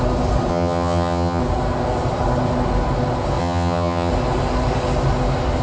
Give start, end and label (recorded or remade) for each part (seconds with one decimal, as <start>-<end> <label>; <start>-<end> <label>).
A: 0.0-0.5 recorded; 0.5-1.4 remade; 1.4-3.4 recorded; 3.4-4.1 remade; 4.1-5.6 recorded